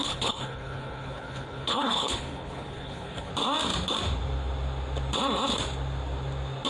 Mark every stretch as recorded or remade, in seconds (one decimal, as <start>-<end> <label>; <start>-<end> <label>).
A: 0.0-3.3 remade; 3.3-6.7 recorded